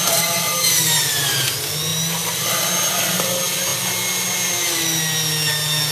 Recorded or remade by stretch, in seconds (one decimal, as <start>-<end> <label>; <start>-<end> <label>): 0.0-5.9 recorded